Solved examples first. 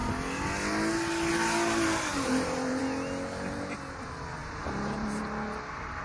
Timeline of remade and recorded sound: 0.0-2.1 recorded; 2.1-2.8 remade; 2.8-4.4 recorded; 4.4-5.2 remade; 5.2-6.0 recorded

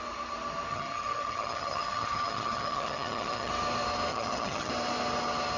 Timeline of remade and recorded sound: 0.0-0.7 recorded; 0.7-3.5 remade; 3.5-4.1 recorded; 4.1-4.7 remade; 4.7-5.6 recorded

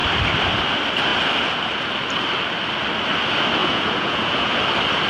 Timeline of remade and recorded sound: 0.0-3.6 recorded; 3.6-4.6 remade; 4.6-5.1 recorded

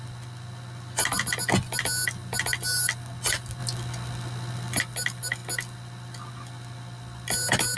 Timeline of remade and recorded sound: 0.0-7.8 recorded

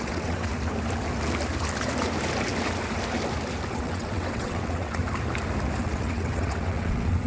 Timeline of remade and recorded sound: 0.0-0.5 remade; 0.5-3.7 recorded; 3.7-5.0 remade; 5.0-5.8 recorded; 5.8-7.3 remade

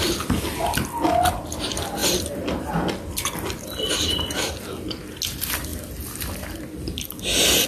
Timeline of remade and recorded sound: 0.0-2.0 recorded; 2.0-2.6 remade; 2.6-5.7 recorded; 5.7-7.0 remade; 7.0-7.7 recorded

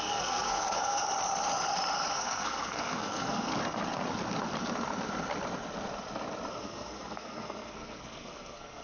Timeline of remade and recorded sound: 0.0-1.0 remade; 1.0-2.1 recorded; 2.1-3.5 remade; 3.5-6.5 recorded; 6.5-8.8 remade

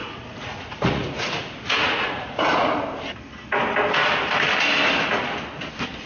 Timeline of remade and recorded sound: 0.0-2.8 remade; 2.8-6.1 recorded